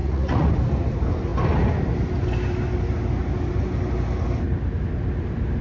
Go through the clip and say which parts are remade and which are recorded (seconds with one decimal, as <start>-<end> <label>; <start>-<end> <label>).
0.0-0.5 remade; 0.5-5.6 recorded